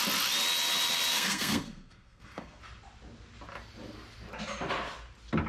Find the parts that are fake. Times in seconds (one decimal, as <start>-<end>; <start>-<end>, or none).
1.1-2.6